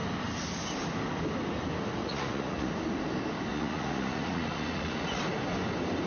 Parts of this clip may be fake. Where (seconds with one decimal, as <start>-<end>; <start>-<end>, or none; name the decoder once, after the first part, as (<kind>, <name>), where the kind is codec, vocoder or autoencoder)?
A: 2.0-2.7 (vocoder, Vocos); 3.5-5.2